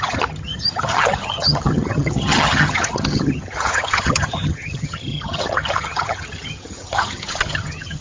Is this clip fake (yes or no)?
yes